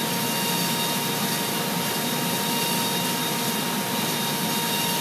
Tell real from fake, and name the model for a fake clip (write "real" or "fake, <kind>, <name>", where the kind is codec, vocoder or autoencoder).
real